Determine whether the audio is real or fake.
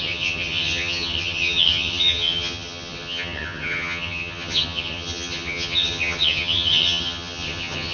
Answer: fake